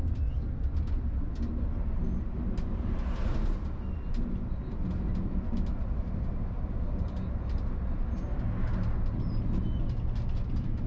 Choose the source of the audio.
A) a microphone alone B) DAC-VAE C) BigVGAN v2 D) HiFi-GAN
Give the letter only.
A